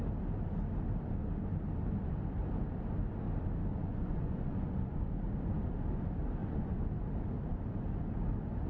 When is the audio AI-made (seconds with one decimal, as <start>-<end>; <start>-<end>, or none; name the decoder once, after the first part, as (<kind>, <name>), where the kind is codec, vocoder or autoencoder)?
3.7-5.0 (vocoder, Vocos); 6.4-6.9